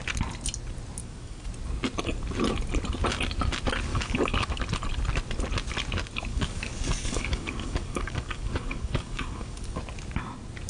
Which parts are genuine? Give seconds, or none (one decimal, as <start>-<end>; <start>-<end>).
0.0-1.0; 1.5-3.9; 4.6-6.3; 9.8-10.7